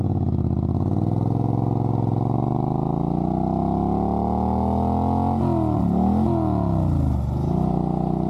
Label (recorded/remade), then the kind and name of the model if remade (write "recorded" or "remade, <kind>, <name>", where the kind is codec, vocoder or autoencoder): recorded